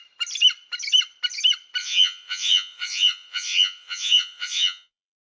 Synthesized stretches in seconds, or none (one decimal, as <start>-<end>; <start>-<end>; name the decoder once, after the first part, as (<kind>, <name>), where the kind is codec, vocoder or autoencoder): 1.8-5.3 (vocoder, Vocos)